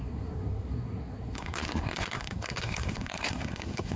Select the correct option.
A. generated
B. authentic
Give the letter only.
A